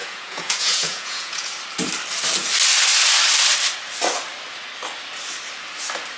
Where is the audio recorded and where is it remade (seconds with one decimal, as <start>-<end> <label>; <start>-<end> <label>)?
0.0-1.5 remade; 1.5-6.2 recorded